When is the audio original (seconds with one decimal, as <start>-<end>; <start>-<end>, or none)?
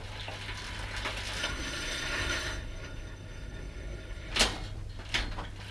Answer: 0.0-1.4; 4.3-5.7